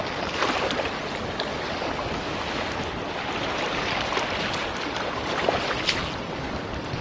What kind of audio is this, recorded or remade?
recorded